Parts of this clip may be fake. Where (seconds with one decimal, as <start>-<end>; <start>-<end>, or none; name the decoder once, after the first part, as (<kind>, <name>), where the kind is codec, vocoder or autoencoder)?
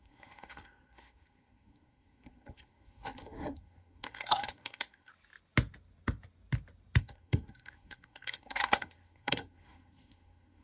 0.0-5.1 (codec, SNAC); 7.0-10.6